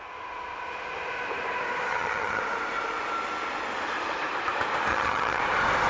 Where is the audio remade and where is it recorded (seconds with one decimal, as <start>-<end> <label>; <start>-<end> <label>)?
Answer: 0.0-1.9 recorded; 1.9-2.4 remade; 2.4-4.9 recorded; 4.9-5.4 remade; 5.4-5.9 recorded